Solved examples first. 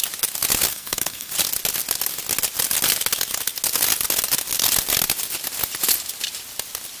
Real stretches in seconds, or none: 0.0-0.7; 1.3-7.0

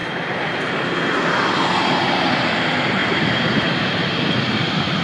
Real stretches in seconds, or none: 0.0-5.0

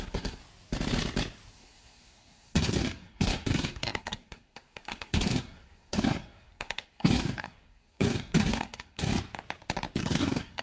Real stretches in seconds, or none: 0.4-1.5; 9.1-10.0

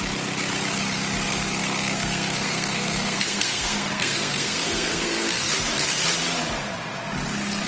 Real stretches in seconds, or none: 0.0-1.3; 5.5-7.7

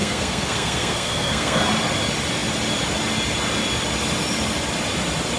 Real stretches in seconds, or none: 1.6-5.4